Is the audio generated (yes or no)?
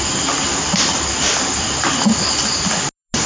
no